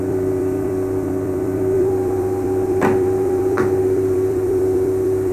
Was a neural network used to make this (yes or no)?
yes